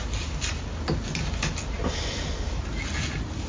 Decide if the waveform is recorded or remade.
recorded